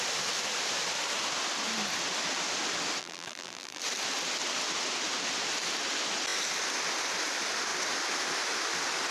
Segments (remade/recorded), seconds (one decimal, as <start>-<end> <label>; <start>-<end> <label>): 0.0-3.0 recorded; 3.0-3.8 remade; 3.8-9.1 recorded

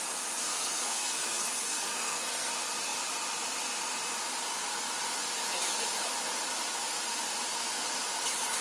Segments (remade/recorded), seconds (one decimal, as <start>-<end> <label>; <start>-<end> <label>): 0.0-0.5 recorded; 0.5-2.5 remade; 2.5-8.6 recorded

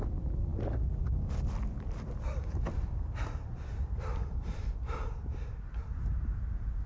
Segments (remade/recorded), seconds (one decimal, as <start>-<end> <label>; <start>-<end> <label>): 0.0-0.5 recorded; 0.5-4.6 remade; 4.6-6.9 recorded